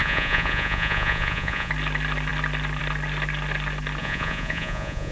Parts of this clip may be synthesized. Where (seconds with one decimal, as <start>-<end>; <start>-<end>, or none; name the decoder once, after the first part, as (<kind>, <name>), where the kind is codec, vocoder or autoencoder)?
0.0-1.7 (vocoder, Vocos); 4.0-5.1

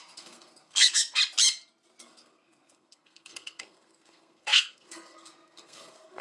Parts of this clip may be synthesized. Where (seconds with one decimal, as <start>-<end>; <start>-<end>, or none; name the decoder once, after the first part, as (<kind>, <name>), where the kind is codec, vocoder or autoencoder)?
0.0-1.2 (codec, SNAC); 2.0-6.2